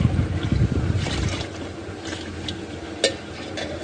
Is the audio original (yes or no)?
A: yes